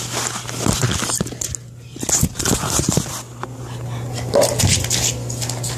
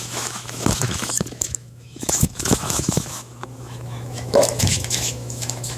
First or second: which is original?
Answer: first